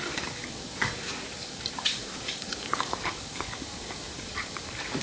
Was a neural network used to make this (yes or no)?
yes